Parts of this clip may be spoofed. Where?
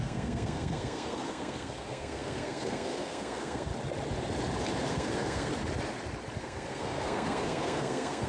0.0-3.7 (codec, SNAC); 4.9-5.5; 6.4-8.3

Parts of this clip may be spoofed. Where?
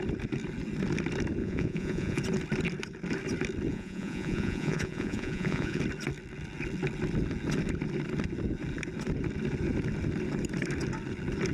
1.4-2.2 (vocoder, Vocos); 3.7-5.8